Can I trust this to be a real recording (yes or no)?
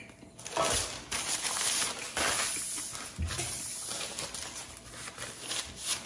yes